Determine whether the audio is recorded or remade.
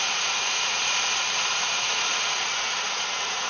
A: remade